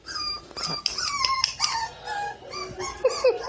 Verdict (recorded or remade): recorded